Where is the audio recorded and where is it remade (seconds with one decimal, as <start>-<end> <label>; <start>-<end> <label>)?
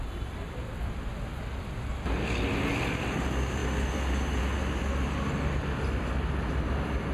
0.0-7.1 recorded